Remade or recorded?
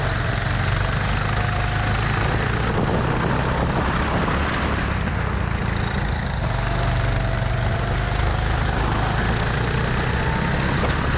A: recorded